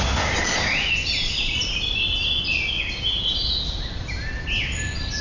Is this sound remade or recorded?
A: recorded